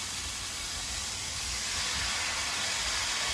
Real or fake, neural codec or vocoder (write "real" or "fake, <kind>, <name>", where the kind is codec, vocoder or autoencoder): real